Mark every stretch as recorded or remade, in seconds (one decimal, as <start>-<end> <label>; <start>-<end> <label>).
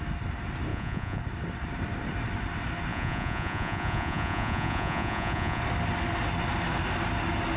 0.0-0.7 recorded; 0.7-1.2 remade; 1.2-2.9 recorded; 2.9-5.6 remade; 5.6-7.6 recorded